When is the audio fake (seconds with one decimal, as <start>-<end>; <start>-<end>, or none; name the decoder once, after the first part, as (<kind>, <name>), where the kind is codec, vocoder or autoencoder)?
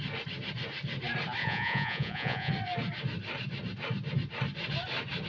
1.4-2.5 (vocoder, Vocos)